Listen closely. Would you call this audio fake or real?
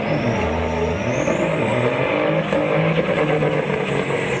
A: real